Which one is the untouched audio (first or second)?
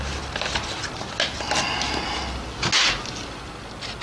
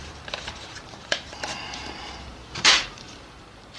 first